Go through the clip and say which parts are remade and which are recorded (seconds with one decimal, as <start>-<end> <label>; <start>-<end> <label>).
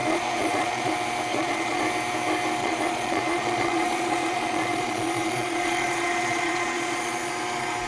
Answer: 0.0-0.9 remade; 0.9-1.3 recorded; 1.3-1.8 remade; 1.8-2.6 recorded; 2.6-7.3 remade; 7.3-7.9 recorded